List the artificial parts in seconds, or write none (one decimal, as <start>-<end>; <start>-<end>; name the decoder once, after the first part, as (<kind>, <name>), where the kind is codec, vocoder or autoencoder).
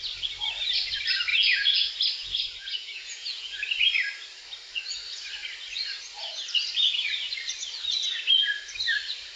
1.3-1.9 (vocoder, Vocos); 2.6-3.5